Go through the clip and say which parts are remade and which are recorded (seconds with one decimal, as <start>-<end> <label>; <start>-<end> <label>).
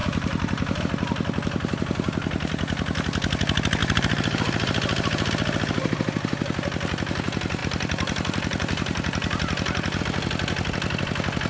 0.0-0.8 remade; 0.8-3.8 recorded; 3.8-5.3 remade; 5.3-7.6 recorded; 7.6-10.0 remade; 10.0-11.5 recorded